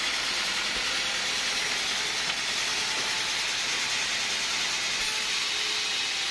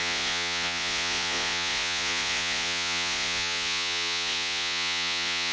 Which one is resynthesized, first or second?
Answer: second